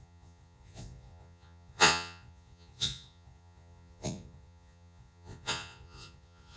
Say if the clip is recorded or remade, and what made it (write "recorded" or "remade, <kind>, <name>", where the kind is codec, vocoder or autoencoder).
remade, vocoder, Vocos